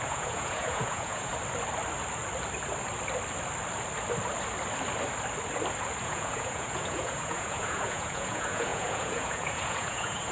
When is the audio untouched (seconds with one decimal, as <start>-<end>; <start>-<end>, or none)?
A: 1.3-6.0